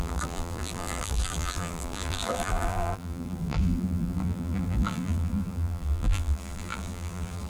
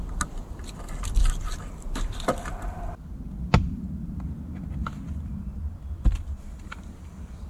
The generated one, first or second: first